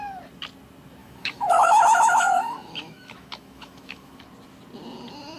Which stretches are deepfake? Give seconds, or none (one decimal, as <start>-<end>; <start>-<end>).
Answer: 1.0-4.2